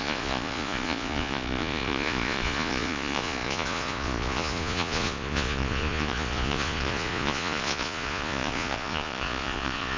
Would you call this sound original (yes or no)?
no